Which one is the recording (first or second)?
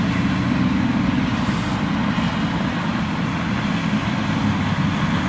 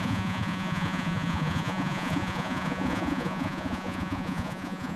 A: first